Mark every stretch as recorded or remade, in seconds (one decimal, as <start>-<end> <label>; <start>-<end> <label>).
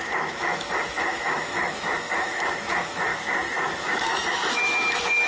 0.0-5.3 remade